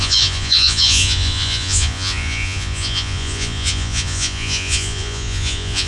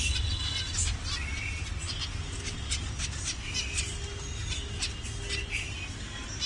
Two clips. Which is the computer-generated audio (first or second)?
first